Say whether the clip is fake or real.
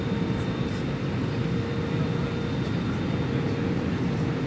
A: real